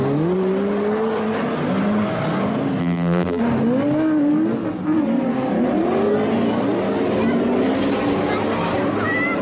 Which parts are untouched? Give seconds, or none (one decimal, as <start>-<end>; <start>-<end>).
0.0-2.8; 3.4-9.4